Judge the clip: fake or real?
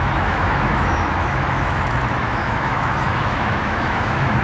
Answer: fake